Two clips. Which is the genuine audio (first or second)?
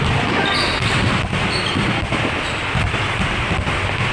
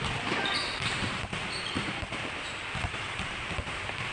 first